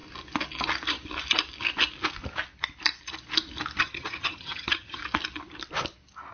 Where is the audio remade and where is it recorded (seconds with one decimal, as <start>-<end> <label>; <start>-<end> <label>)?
0.0-3.8 recorded; 3.8-5.0 remade; 5.0-6.3 recorded